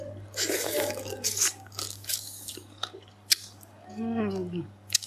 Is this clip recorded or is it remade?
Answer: remade